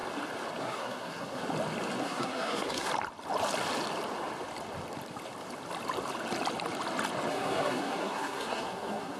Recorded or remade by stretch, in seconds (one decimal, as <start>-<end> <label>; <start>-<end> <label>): 0.0-0.6 recorded; 0.6-1.4 remade; 1.4-2.0 recorded; 2.0-2.9 remade; 2.9-7.3 recorded; 7.3-9.2 remade